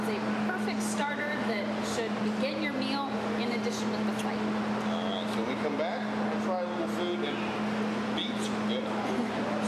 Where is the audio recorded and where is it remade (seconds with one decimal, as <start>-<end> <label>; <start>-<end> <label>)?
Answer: 0.0-1.0 recorded; 1.0-1.6 remade; 1.6-9.7 recorded